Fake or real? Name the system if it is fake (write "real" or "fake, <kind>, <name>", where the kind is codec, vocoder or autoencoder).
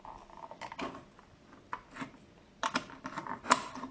real